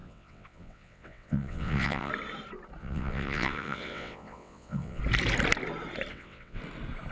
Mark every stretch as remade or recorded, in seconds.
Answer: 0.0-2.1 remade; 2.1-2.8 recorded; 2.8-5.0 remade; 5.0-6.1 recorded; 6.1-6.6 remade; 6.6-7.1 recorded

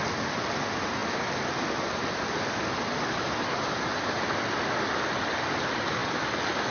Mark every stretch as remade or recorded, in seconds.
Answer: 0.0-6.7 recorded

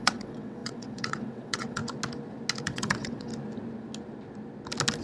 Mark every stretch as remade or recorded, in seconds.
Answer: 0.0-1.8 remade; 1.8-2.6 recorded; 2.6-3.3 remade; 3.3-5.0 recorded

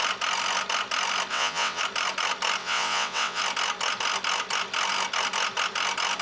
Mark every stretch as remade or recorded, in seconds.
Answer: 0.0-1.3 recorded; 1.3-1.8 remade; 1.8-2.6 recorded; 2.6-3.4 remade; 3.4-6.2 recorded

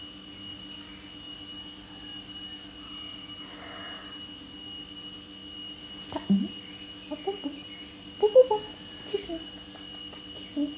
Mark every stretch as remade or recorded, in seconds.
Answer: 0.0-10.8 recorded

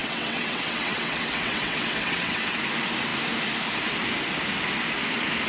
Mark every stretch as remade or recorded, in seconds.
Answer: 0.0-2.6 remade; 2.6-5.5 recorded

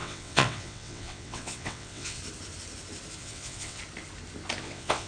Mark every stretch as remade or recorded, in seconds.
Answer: 0.0-2.2 remade; 2.2-3.2 recorded; 3.2-3.8 remade; 3.8-4.6 recorded; 4.6-5.1 remade